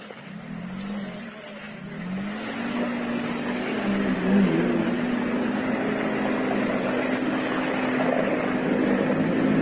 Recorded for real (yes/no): yes